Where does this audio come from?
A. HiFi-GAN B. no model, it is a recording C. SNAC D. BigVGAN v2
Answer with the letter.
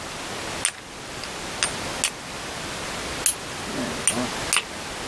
B